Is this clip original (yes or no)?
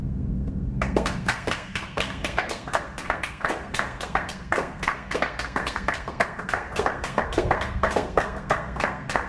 no